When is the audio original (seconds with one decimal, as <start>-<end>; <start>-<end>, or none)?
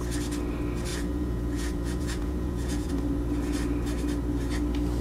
0.0-0.9; 2.9-5.0